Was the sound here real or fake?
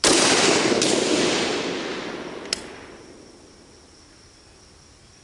real